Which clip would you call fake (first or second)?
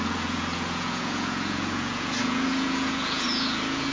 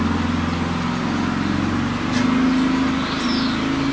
first